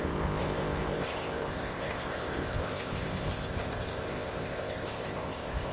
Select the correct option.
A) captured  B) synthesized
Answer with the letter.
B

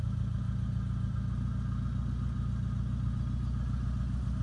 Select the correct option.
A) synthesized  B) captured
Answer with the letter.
B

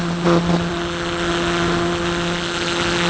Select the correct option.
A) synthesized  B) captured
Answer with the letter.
B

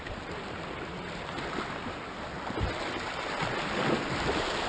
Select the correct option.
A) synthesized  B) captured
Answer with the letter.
B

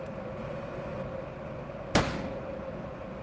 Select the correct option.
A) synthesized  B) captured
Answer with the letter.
B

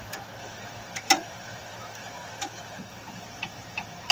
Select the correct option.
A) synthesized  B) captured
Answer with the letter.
A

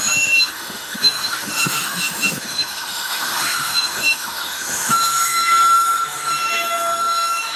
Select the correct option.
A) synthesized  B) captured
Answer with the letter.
A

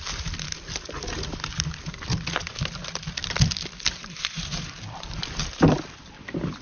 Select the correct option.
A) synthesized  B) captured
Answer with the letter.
B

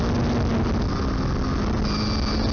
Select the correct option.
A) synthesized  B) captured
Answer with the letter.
B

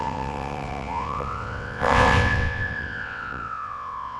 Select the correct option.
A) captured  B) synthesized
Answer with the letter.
B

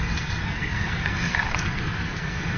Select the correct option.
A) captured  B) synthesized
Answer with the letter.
B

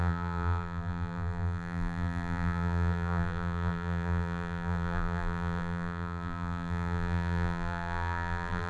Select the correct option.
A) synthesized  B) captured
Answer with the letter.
A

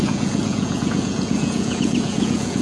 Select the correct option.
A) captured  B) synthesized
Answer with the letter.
B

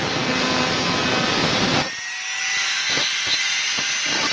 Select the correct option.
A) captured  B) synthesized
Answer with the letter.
A